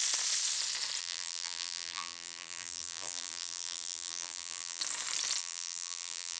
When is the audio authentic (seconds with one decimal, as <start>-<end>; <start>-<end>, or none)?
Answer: 0.0-1.0; 4.8-5.4